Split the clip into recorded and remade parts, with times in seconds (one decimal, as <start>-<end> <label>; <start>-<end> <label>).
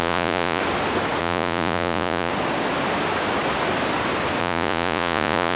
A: 0.0-0.6 remade; 0.6-1.2 recorded; 1.2-2.3 remade; 2.3-4.4 recorded; 4.4-5.6 remade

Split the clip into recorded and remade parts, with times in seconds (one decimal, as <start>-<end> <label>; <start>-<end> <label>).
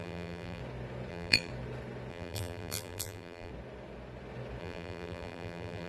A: 0.0-0.6 remade; 0.6-1.1 recorded; 1.1-1.5 remade; 1.5-2.1 recorded; 2.1-3.5 remade; 3.5-4.6 recorded; 4.6-5.9 remade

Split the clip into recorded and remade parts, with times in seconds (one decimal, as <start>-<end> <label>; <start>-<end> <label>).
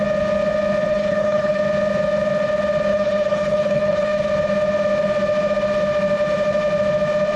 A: 0.0-0.9 recorded; 0.9-1.6 remade; 1.6-2.9 recorded; 2.9-4.3 remade; 4.3-7.4 recorded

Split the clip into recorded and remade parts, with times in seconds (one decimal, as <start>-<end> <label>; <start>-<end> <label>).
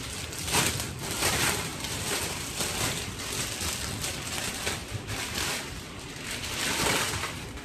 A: 0.0-1.7 recorded; 1.7-3.0 remade; 3.0-4.8 recorded; 4.8-6.1 remade; 6.1-7.6 recorded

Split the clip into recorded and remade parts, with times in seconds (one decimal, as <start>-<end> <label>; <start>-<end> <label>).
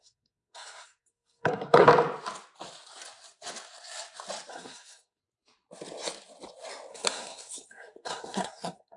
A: 0.0-1.9 remade; 1.9-4.5 recorded; 4.5-5.2 remade; 5.2-6.9 recorded; 6.9-9.0 remade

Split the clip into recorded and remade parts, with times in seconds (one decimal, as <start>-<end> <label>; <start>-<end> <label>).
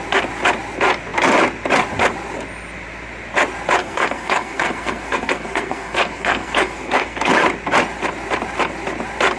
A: 0.0-3.8 recorded; 3.8-7.3 remade; 7.3-9.4 recorded